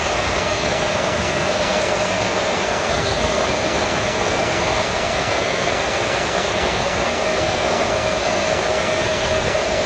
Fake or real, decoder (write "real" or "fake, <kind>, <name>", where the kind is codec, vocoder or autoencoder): fake, codec, SNAC